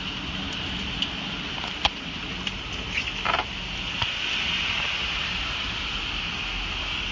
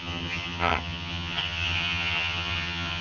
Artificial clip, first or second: second